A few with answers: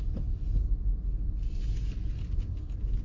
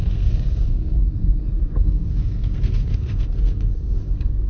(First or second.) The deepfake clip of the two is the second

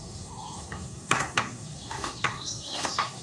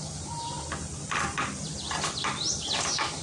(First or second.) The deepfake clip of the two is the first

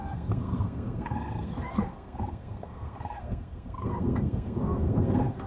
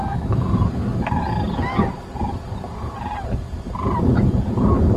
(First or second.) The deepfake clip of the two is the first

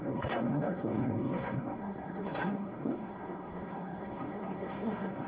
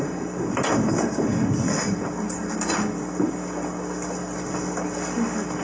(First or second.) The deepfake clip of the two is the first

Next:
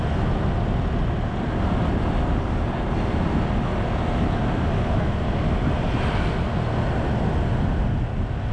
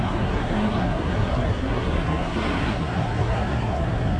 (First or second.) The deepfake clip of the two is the second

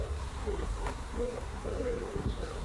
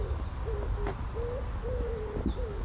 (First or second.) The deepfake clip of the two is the first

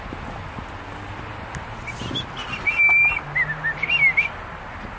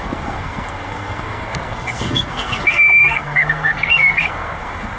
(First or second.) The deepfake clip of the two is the second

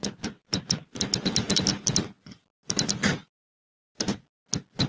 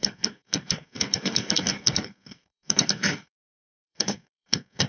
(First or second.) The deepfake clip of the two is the second